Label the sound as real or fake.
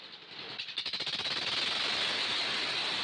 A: real